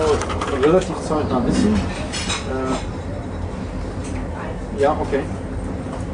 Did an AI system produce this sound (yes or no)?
no